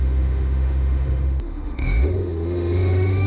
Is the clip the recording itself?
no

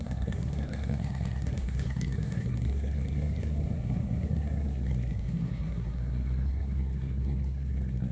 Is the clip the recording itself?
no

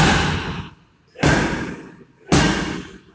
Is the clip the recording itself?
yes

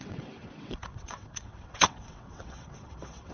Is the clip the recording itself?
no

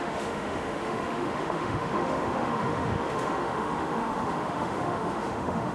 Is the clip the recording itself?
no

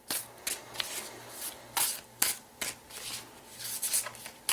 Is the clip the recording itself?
yes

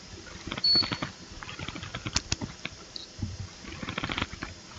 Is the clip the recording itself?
yes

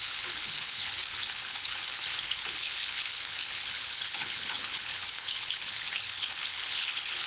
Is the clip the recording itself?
no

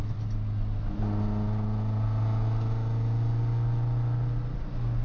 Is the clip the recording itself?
yes